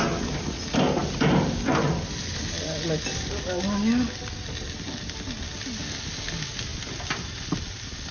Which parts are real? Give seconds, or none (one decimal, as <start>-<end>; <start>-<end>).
0.0-8.1